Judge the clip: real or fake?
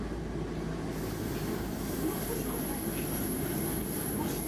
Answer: real